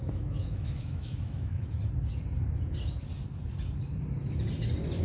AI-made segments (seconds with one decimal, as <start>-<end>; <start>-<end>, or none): 0.0-1.8